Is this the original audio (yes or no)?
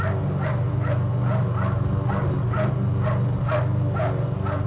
yes